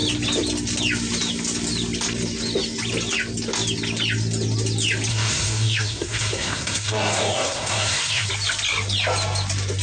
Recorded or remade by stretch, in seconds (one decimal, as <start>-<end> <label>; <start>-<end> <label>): 0.0-5.1 recorded; 5.1-8.3 remade; 8.3-9.8 recorded